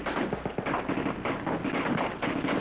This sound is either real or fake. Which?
real